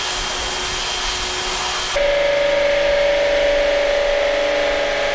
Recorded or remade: recorded